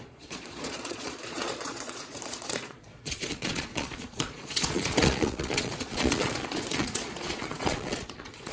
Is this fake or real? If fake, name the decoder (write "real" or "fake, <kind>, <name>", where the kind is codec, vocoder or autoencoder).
fake, vocoder, Vocos